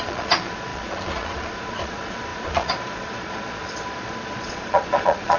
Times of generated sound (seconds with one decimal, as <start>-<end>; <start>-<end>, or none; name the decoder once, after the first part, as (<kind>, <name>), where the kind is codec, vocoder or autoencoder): 0.0-5.4 (vocoder, Vocos)